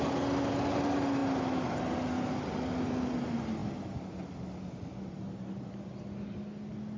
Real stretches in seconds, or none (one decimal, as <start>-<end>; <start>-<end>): 0.0-7.0